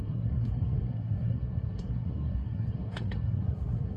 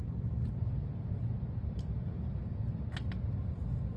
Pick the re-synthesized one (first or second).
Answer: first